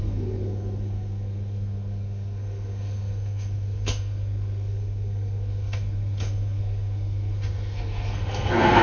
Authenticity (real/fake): fake